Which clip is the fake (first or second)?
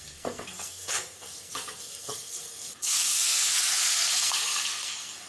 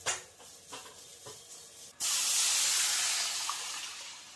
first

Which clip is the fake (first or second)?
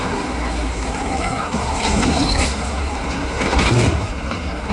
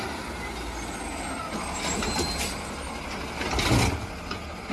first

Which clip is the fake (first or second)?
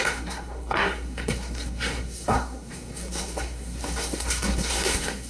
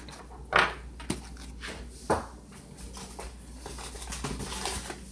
first